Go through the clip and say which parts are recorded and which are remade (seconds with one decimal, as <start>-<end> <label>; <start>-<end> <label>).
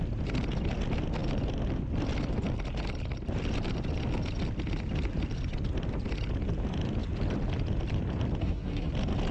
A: 0.0-8.4 recorded; 8.4-8.9 remade; 8.9-9.3 recorded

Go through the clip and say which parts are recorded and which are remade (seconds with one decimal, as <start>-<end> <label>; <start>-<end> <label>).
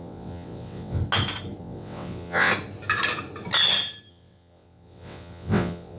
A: 0.0-1.0 remade; 1.0-1.6 recorded; 1.6-2.5 remade; 2.5-4.1 recorded; 4.1-6.0 remade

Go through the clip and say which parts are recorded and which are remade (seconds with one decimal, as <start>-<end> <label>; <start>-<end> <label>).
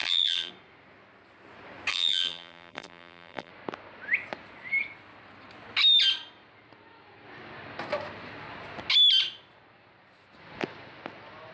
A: 0.0-0.5 remade; 0.5-1.9 recorded; 1.9-3.5 remade; 3.5-11.5 recorded